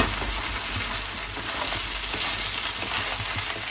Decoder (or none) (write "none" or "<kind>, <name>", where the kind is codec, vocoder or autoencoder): none